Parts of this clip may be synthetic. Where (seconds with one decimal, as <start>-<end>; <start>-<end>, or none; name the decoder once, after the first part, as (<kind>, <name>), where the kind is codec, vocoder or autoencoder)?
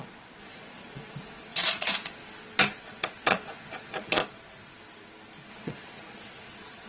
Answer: 0.0-2.2 (vocoder, Vocos); 2.8-4.2; 5.5-6.9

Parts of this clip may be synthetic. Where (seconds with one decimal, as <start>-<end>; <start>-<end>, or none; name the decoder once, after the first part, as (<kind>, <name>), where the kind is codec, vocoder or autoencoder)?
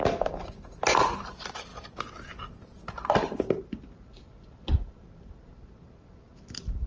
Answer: none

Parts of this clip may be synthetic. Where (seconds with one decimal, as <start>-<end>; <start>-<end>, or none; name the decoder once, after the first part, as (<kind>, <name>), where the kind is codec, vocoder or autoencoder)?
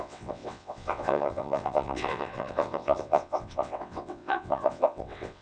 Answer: 0.0-5.4 (vocoder, WaveNeXt)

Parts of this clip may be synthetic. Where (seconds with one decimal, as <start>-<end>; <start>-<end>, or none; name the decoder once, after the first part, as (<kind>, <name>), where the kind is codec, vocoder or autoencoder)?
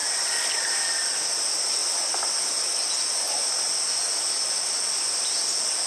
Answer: none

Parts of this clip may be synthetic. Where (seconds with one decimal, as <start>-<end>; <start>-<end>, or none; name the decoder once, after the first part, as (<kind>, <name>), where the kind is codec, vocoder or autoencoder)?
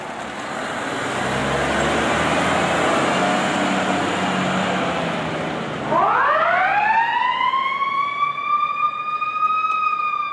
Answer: none